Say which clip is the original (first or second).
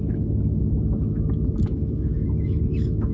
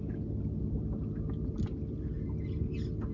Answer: second